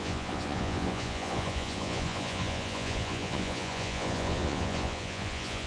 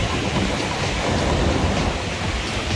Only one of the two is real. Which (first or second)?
second